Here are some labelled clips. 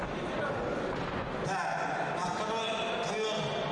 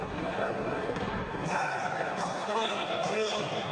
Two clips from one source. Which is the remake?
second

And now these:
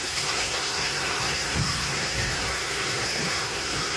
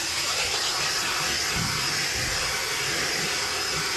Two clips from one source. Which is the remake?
first